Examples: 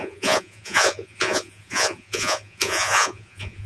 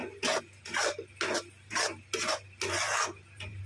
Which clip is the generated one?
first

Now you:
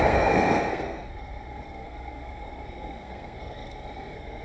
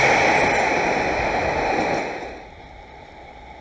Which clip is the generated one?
first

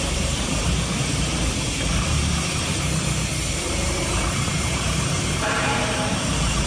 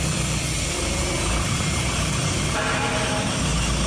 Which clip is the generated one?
first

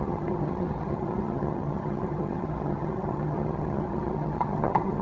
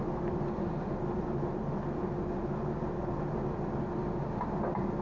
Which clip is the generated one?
first